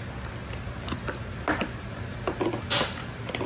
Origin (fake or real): real